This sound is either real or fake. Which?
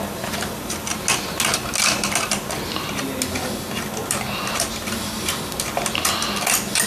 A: real